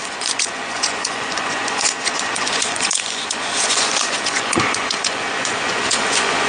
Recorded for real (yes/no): no